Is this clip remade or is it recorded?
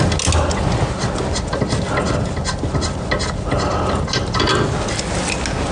recorded